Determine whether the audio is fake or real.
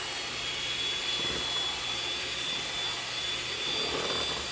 real